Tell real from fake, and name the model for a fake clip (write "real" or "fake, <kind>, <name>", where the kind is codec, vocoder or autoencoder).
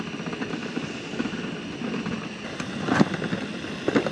real